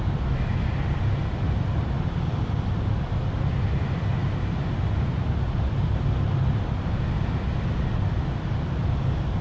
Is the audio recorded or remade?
recorded